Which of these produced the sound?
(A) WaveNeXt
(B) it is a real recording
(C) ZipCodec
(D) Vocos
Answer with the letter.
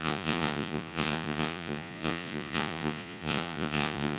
D